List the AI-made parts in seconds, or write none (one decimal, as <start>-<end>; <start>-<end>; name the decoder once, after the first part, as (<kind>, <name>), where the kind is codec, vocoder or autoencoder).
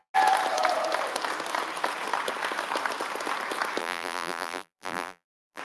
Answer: 3.8-5.6 (vocoder, BigVGAN v2)